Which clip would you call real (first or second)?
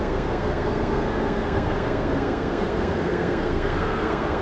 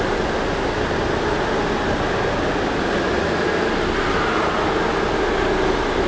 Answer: second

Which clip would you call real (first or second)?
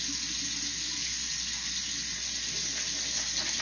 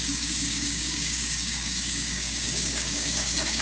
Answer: first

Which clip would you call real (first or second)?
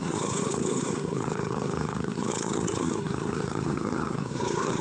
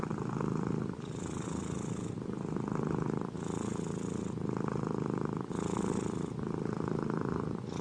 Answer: second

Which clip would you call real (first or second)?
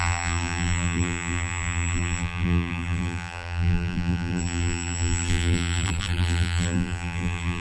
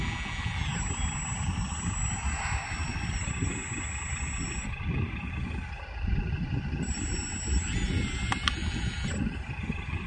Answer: second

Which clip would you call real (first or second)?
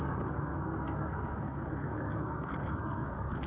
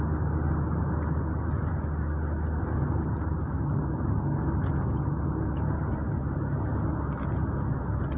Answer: second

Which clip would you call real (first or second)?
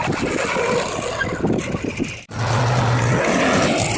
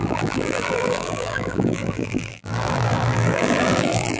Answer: first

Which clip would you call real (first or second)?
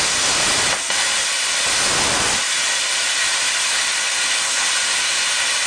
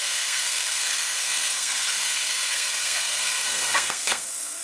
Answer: first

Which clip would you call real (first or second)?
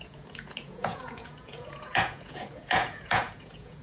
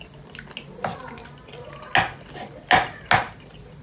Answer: second